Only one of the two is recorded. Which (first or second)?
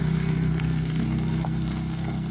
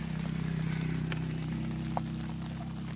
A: second